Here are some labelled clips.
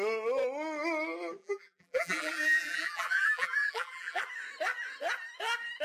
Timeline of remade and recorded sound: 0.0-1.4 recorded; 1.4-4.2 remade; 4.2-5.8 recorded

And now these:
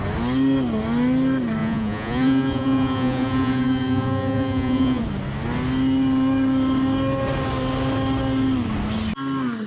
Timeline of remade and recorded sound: 0.0-1.6 recorded; 1.6-5.0 remade; 5.0-9.7 recorded

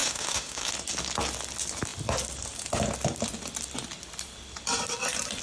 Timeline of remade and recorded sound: 0.0-0.7 remade; 0.7-5.4 recorded

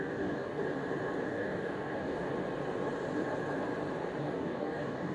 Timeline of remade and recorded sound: 0.0-0.6 remade; 0.6-1.2 recorded; 1.2-2.3 remade; 2.3-4.2 recorded; 4.2-5.1 remade

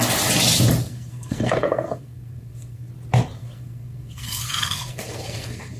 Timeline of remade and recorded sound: 0.0-0.8 recorded; 0.8-2.9 remade; 2.9-3.4 recorded; 3.4-5.8 remade

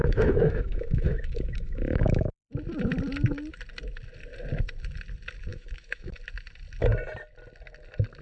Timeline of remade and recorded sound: 0.0-2.5 remade; 2.5-5.5 recorded; 5.5-6.2 remade; 6.2-8.2 recorded

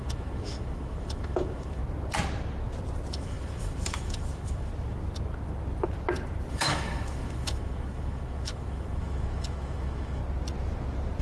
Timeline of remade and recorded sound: 0.0-1.8 remade; 1.8-3.1 recorded; 3.1-4.7 remade; 4.7-6.5 recorded; 6.5-10.2 remade; 10.2-11.2 recorded

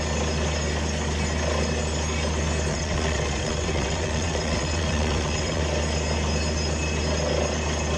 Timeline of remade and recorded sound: 0.0-2.7 recorded; 2.7-5.6 remade; 5.6-8.0 recorded